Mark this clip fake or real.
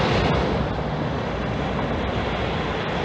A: real